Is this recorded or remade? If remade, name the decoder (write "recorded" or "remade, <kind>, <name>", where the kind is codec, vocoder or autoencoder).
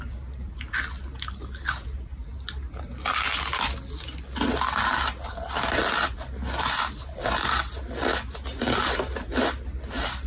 recorded